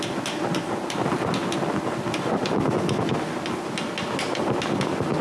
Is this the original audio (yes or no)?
yes